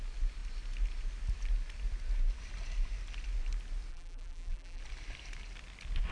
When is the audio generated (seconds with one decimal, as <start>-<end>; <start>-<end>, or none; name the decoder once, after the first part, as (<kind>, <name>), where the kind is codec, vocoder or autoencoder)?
3.9-4.8 (vocoder, BigVGAN v2)